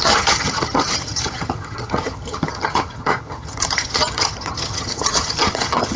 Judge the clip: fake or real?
fake